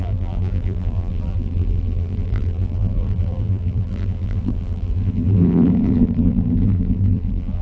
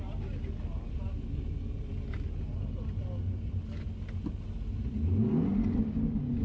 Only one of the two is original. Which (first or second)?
second